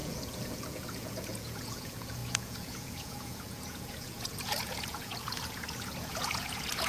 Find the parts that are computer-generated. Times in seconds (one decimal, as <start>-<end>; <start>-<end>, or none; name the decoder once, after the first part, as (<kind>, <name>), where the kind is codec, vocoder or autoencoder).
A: 0.0-6.9 (vocoder, Vocos)

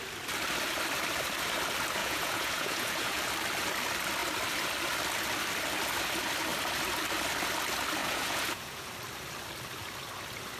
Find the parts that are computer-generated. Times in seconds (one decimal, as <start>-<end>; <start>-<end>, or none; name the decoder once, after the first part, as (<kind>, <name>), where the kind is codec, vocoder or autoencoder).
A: 2.0-3.2 (vocoder, Vocos); 8.0-8.9

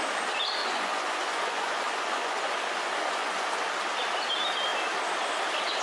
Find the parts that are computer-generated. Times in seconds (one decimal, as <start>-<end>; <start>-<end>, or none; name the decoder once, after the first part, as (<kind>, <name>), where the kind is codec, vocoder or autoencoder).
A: 0.6-3.5 (vocoder, Vocos)

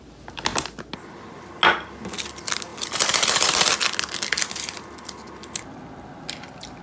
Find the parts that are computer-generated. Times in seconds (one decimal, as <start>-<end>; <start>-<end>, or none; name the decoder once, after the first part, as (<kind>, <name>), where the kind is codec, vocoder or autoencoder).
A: none

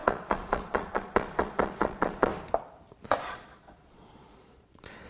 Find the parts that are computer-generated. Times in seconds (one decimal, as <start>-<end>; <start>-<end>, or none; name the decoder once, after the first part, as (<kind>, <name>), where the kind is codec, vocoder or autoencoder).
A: 0.0-2.3 (vocoder, Vocos); 3.2-5.1

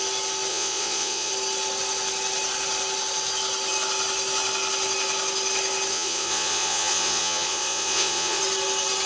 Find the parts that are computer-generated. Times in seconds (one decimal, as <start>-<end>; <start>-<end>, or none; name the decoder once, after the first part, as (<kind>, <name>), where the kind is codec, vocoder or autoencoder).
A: 0.5-1.3 (vocoder, Vocos); 5.9-8.4

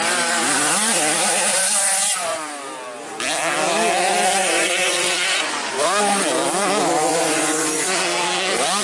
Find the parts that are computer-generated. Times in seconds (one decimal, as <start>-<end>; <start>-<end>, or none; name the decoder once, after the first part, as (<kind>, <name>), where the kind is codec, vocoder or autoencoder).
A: 1.5-2.5 (vocoder, Vocos); 4.4-5.7; 7.1-8.0

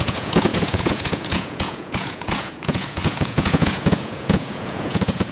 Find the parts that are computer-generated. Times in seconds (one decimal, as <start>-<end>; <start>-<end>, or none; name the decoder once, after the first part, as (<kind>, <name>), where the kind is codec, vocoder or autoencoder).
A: 0.0-5.3 (vocoder, Vocos)